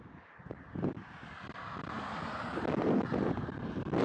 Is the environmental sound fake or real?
real